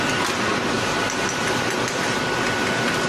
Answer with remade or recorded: recorded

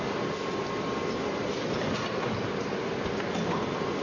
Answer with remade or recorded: recorded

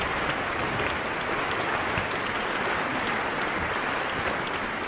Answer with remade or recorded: remade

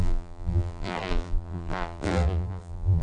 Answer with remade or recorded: remade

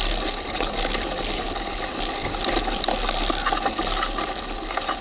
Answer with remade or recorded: recorded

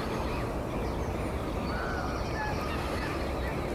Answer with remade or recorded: recorded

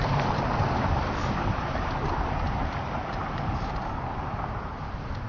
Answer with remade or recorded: remade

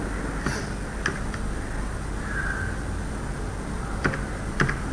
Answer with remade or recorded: remade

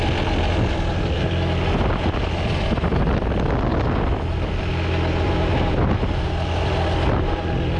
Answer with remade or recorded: recorded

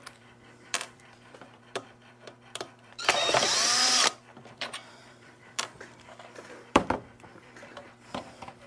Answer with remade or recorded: remade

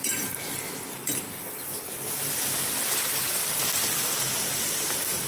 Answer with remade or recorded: remade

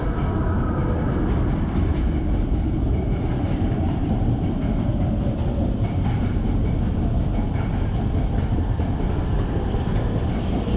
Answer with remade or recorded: remade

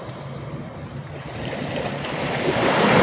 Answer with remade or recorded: remade